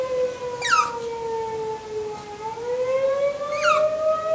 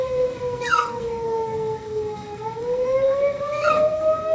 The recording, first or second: first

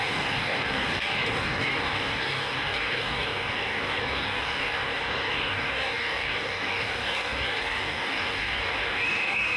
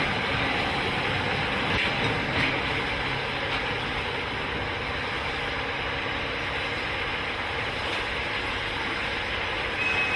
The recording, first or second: second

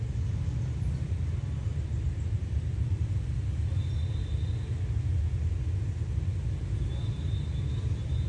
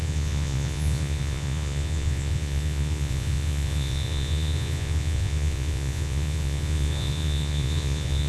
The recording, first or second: first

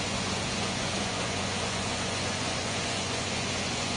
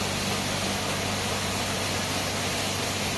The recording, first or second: second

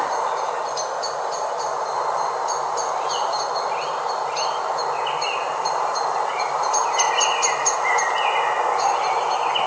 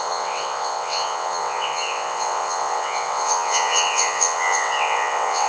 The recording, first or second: first